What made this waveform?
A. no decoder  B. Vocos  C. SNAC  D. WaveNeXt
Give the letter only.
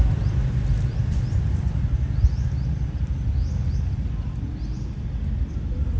A